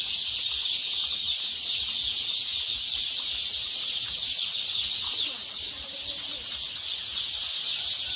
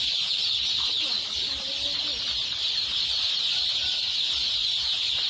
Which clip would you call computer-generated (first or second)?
first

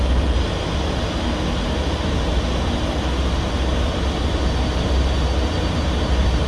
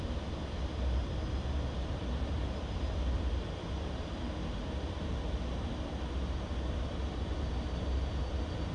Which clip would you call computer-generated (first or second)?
second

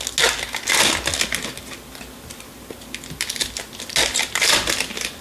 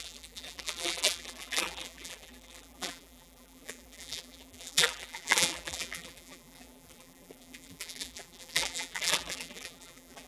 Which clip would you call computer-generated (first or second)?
second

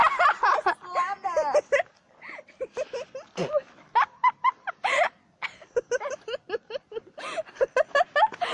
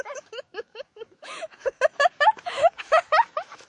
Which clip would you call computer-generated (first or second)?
second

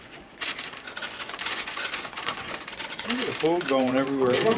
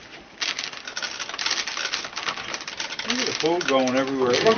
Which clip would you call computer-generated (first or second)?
first